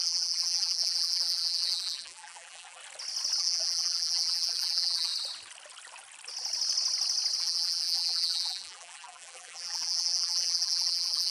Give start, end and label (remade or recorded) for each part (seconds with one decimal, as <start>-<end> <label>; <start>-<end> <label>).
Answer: 0.0-2.8 remade; 2.8-3.4 recorded; 3.4-5.1 remade; 5.1-7.4 recorded; 7.4-11.3 remade